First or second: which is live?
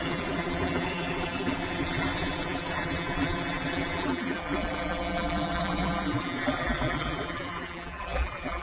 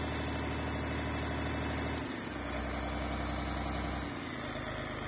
second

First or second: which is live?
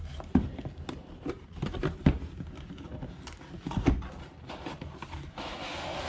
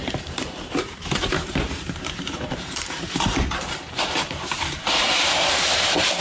first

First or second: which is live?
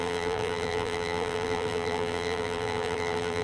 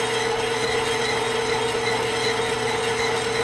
second